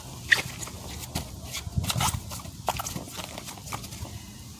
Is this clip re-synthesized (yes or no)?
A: no